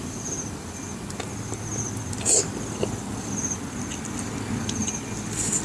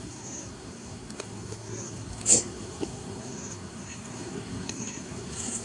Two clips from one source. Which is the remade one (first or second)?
second